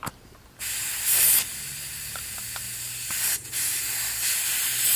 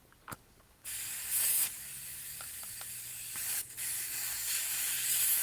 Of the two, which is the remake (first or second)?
second